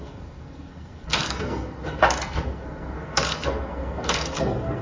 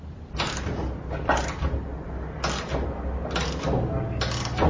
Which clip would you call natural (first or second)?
second